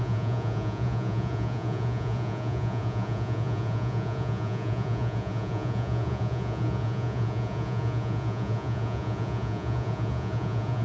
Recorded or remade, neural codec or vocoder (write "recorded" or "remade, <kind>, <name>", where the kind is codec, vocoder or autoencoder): remade, vocoder, Vocos